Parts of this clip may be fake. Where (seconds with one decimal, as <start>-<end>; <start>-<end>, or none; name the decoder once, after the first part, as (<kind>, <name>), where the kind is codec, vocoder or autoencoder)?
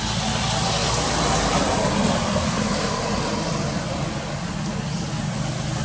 none